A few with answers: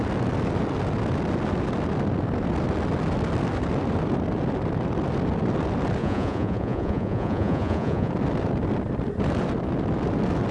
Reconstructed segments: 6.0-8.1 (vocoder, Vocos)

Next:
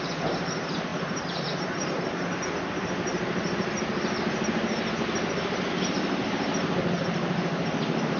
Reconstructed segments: 0.9-2.2 (vocoder, BigVGAN v2)

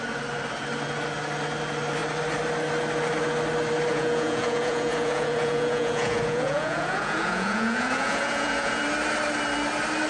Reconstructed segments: 3.9-8.8 (vocoder, Vocos)

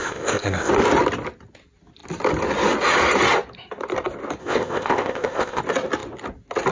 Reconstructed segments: 0.0-0.7 (codec, ZipCodec); 4.4-5.6

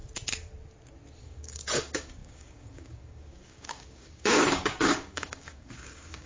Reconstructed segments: 1.2-6.3 (codec, DAC)

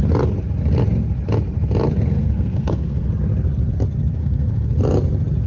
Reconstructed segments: 2.1-3.1 (codec, SNAC); 4.2-4.8

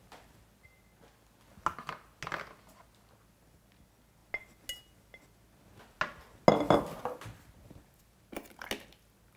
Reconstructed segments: none

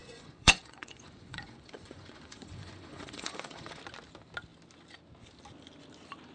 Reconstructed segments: 0.0-3.8 (vocoder, Vocos)